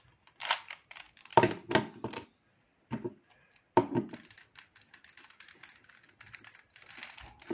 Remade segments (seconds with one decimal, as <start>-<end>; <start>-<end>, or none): none